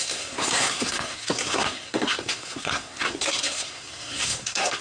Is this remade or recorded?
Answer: remade